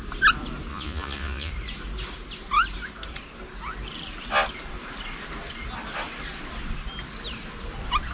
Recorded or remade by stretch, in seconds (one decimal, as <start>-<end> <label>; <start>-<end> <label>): 0.0-0.7 recorded; 0.7-1.5 remade; 1.5-8.1 recorded